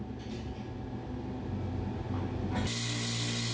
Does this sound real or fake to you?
real